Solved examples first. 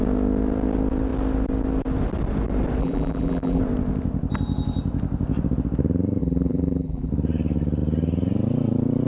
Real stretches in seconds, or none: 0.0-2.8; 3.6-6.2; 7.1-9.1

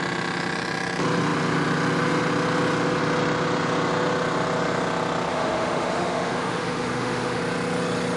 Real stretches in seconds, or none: 0.0-5.3; 7.4-8.2

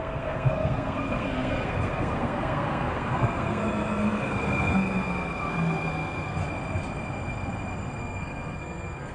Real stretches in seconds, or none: 6.4-8.0